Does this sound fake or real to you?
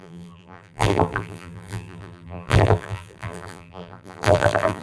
fake